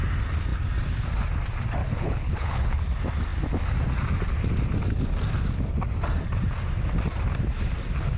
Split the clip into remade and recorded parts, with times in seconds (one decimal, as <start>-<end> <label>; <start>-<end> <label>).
0.0-1.8 recorded; 1.8-2.8 remade; 2.8-8.2 recorded